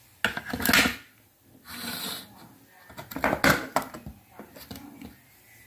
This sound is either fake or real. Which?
real